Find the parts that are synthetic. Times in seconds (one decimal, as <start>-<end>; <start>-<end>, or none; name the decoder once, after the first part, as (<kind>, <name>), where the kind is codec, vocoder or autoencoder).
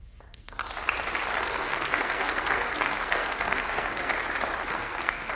0.0-0.6 (codec, SNAC); 1.4-4.1; 4.7-5.4